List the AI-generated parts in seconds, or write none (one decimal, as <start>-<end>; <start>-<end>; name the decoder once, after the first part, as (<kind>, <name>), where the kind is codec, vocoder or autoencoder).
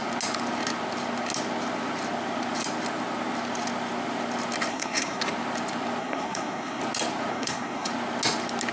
4.7-5.2 (codec, SNAC); 6.0-6.8; 7.3-7.9